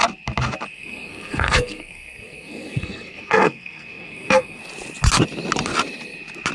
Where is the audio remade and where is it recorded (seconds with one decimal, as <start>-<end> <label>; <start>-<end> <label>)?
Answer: 0.0-0.7 recorded; 0.7-4.6 remade; 4.6-6.5 recorded